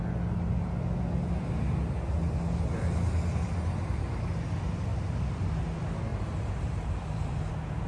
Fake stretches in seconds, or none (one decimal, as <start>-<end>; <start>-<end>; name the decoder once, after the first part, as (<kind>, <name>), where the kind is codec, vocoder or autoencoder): 6.1-7.5 (vocoder, BigVGAN v2)